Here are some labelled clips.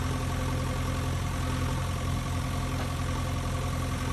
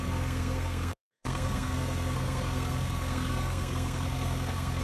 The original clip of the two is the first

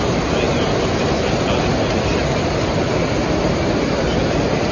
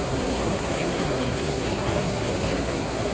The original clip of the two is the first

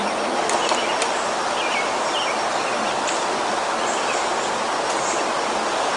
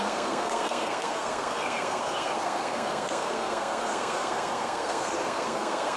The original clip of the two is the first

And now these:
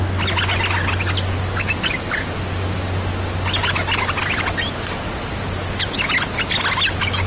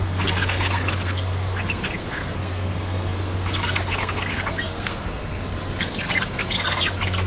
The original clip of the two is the first